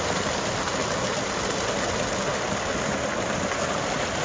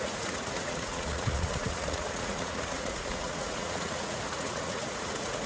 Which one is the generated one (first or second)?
second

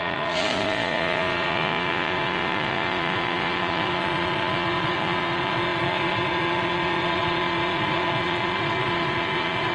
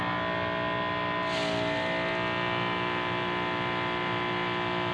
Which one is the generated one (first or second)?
first